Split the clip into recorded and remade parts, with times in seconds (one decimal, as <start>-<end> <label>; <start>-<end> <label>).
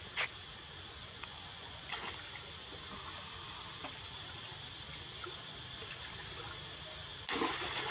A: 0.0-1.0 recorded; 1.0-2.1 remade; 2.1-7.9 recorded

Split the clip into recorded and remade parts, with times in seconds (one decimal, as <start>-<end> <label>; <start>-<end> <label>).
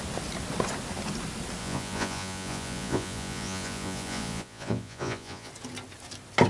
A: 0.0-1.6 recorded; 1.6-5.5 remade; 5.5-6.5 recorded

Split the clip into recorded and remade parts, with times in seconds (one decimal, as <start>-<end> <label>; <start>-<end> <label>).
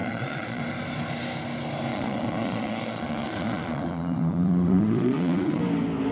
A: 0.0-0.6 remade; 0.6-1.9 recorded; 1.9-5.6 remade; 5.6-6.1 recorded